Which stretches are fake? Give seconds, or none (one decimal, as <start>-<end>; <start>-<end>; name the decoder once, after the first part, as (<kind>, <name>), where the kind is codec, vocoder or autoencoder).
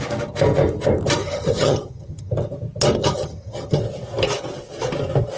1.2-2.3 (vocoder, HiFi-GAN); 3.0-3.8